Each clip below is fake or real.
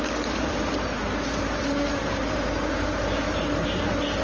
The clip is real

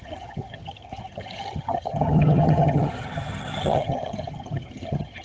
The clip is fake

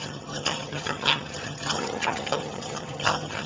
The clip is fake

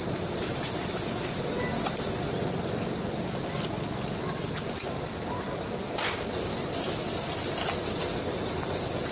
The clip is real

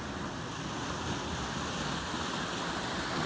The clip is real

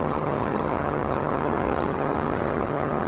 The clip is fake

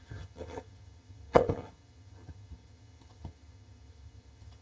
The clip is fake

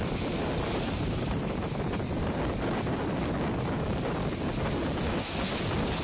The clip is real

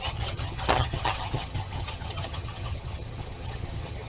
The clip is fake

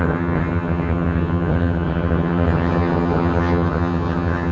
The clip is fake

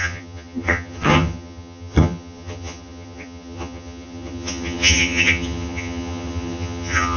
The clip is fake